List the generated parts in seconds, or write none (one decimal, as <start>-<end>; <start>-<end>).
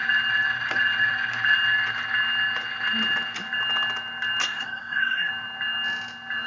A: 4.4-5.3